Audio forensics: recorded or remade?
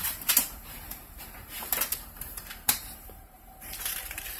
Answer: remade